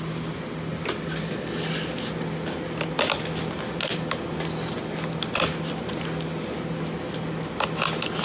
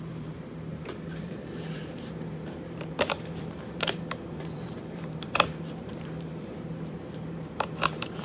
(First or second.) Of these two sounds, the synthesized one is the second